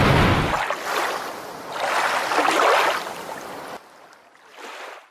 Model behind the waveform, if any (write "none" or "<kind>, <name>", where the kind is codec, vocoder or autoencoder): none